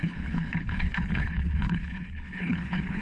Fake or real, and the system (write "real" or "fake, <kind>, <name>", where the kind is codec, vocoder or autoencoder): fake, codec, HILCodec